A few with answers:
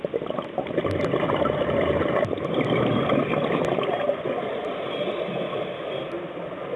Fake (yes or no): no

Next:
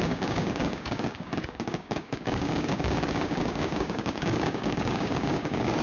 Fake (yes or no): yes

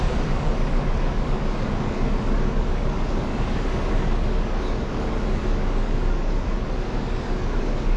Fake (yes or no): yes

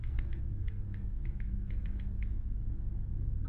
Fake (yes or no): yes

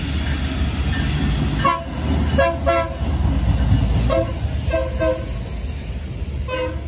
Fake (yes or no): no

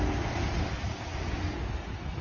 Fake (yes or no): no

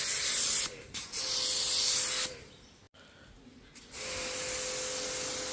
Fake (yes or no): no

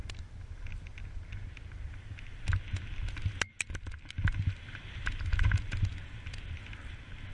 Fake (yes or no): no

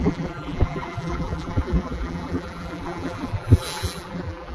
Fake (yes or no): yes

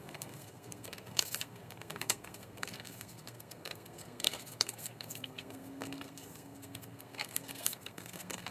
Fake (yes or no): yes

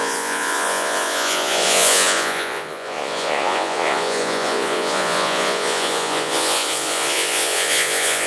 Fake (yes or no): yes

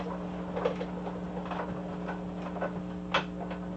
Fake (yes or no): no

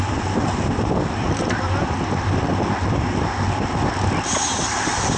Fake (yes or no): no